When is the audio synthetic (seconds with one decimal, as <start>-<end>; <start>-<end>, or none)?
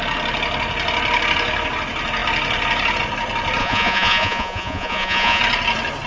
3.6-5.4